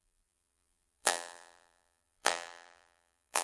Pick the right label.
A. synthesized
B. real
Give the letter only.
A